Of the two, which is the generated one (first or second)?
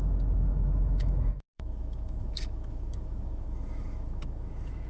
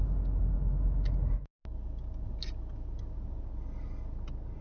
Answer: first